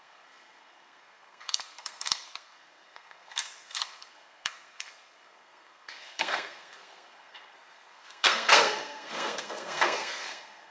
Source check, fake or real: fake